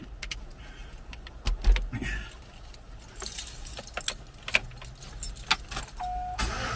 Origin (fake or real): real